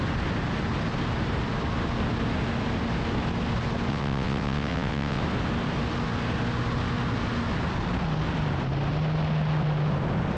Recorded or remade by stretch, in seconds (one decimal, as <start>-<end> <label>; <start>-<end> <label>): 0.0-3.9 recorded; 3.9-5.2 remade; 5.2-10.4 recorded